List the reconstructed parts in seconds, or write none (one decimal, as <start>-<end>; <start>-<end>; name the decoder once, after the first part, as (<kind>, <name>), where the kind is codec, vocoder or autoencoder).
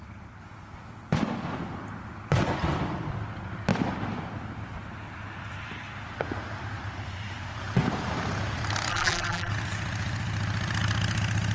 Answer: 8.9-9.5 (vocoder, BigVGAN v2)